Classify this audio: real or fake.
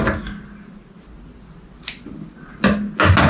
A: real